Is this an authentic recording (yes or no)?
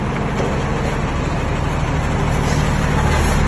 yes